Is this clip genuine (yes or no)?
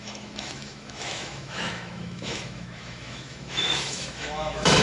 no